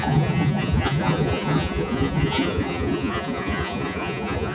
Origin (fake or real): fake